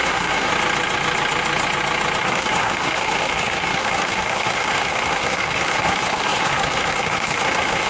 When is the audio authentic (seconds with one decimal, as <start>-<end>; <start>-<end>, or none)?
0.5-2.2